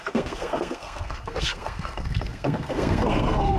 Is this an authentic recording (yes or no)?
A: no